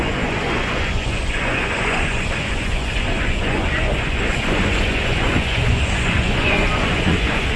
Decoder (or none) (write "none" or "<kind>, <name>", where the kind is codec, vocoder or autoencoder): vocoder, Vocos